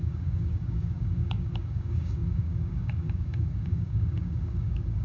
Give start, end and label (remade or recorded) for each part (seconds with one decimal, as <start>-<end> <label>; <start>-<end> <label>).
0.0-5.0 remade